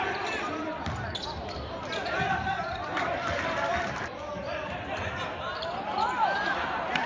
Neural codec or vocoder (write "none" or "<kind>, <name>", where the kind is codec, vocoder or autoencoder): vocoder, BigVGAN v2